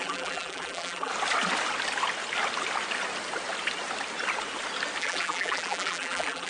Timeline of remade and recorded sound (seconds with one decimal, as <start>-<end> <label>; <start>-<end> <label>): 0.0-1.1 remade; 1.1-5.0 recorded; 5.0-6.5 remade